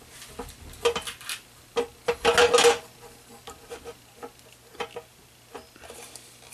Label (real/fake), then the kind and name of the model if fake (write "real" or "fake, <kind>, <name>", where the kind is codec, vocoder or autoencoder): real